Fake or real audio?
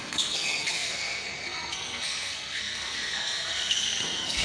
fake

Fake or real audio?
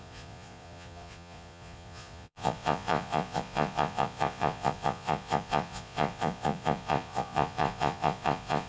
fake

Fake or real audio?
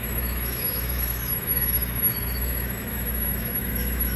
fake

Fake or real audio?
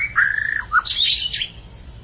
fake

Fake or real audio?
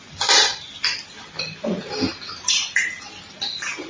fake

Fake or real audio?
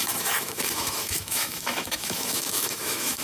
fake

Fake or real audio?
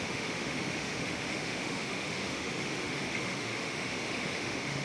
fake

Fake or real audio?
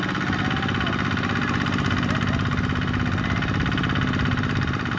real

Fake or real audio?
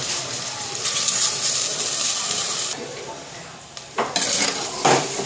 real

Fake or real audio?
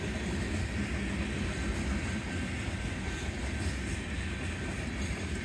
real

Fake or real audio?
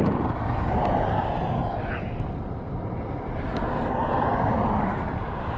fake